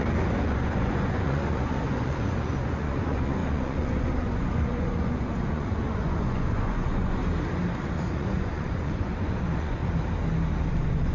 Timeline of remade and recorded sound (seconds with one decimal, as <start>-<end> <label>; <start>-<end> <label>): 0.0-7.2 remade; 7.2-7.8 recorded; 7.8-9.8 remade; 9.8-10.7 recorded; 10.7-11.1 remade